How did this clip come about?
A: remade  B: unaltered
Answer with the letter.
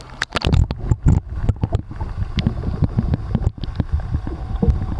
B